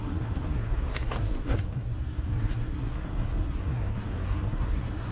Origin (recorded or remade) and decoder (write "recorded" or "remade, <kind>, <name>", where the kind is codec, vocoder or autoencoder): remade, codec, SNAC